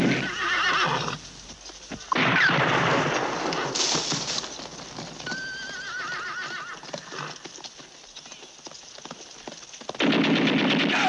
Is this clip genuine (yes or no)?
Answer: yes